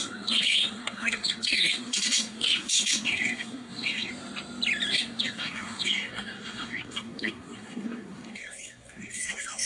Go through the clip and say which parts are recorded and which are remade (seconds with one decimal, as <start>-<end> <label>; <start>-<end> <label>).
0.0-4.1 remade; 4.1-4.9 recorded; 4.9-9.7 remade